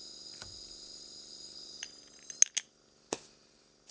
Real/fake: real